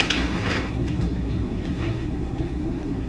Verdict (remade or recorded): remade